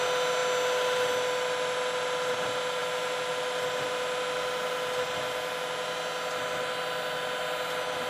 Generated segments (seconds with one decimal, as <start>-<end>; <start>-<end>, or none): none